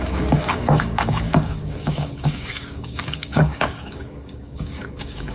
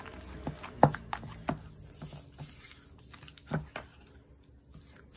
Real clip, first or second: second